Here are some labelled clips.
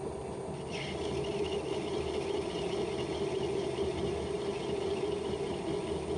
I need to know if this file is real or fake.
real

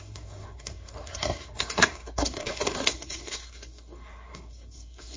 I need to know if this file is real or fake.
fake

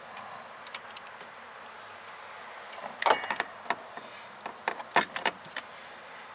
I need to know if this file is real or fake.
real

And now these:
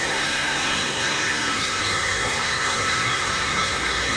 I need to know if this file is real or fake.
fake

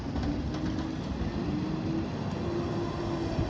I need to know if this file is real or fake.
real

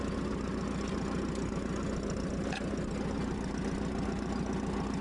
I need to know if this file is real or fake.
real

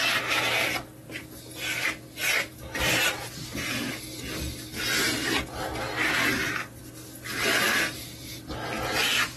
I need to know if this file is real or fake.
real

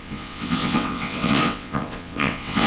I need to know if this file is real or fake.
fake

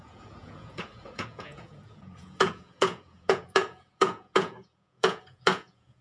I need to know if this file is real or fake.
fake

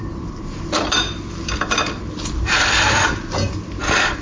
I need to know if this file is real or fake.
fake